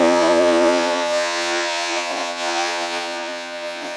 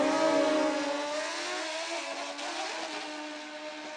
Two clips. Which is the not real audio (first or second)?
first